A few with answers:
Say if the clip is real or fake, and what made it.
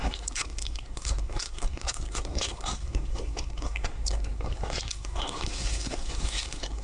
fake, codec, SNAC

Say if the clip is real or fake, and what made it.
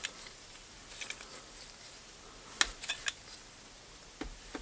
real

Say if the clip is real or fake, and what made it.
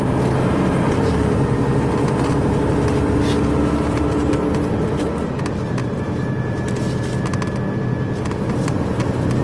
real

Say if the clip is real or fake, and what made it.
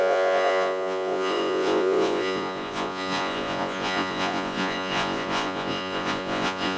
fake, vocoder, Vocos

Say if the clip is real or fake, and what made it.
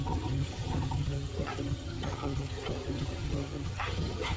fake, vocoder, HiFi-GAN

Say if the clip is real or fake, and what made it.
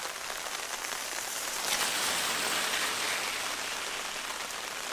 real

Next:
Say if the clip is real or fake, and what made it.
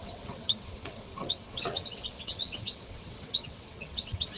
fake, vocoder, WaveNeXt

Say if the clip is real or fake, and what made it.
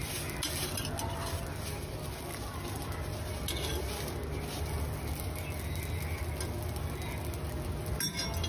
real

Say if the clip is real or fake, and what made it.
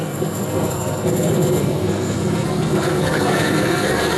fake, codec, SNAC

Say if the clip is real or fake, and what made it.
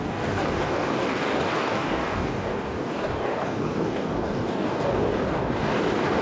fake, codec, DAC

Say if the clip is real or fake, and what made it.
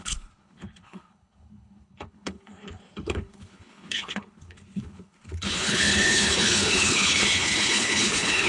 fake, codec, HILCodec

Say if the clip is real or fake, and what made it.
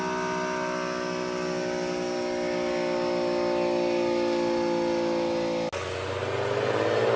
real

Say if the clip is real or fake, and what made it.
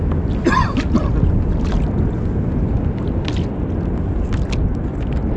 real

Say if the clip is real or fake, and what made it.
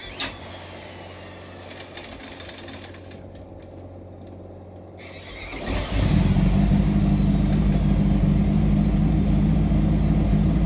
real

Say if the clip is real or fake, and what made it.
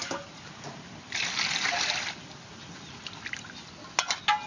real